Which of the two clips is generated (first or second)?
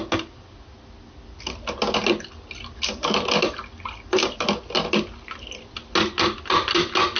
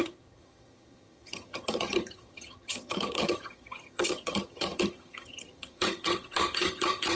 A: second